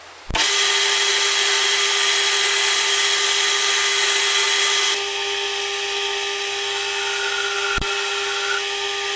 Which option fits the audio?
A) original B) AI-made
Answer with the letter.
A